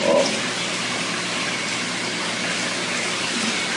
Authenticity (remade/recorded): recorded